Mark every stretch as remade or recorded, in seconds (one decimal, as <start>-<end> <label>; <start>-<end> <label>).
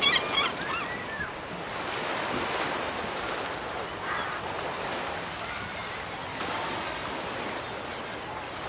0.0-8.7 recorded